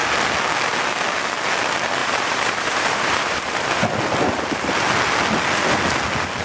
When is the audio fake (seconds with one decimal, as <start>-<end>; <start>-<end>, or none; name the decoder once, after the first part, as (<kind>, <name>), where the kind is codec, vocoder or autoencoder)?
2.0-3.8 (vocoder, BigVGAN v2)